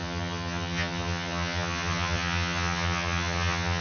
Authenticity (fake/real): fake